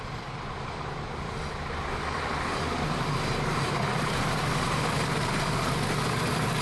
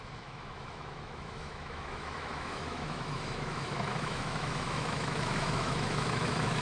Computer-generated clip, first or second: second